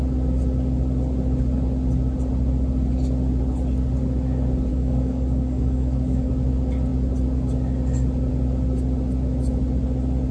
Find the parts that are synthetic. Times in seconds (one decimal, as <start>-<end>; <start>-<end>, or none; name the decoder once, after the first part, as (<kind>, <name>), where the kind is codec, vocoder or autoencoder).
4.7-6.3 (codec, DAC)